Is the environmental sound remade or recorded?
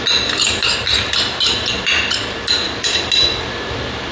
recorded